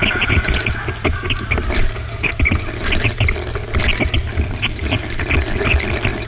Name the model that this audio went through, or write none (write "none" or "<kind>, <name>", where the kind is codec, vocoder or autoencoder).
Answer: none